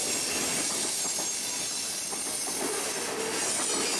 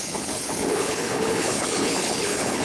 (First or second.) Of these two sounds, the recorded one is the first